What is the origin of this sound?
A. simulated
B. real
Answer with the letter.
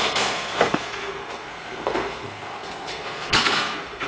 A